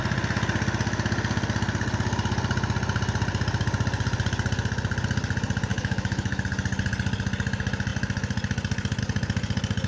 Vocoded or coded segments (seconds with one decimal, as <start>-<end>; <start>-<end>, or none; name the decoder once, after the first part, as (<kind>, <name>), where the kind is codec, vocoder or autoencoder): 5.7-6.4 (autoencoder, DAC-VAE)